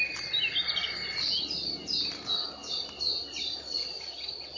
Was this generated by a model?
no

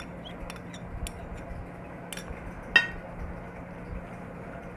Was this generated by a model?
no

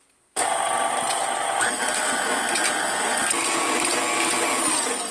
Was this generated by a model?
no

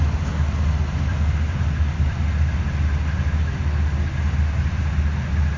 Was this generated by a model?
no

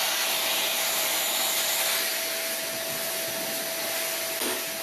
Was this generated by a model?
no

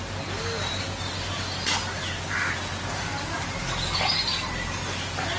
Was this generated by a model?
no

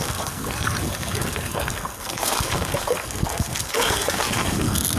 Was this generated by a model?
yes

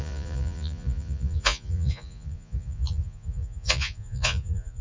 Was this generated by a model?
yes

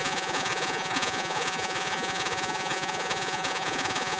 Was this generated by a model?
yes